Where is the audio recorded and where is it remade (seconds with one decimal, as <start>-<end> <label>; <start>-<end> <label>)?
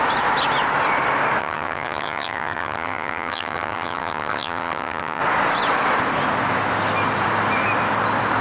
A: 0.0-1.4 recorded; 1.4-5.2 remade; 5.2-8.4 recorded